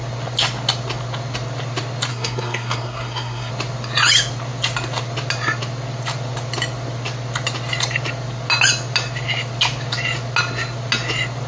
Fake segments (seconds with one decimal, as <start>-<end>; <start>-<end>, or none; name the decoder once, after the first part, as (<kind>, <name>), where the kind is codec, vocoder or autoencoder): 2.1-3.5 (codec, SNAC)